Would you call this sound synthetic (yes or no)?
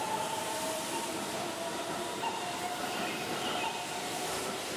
yes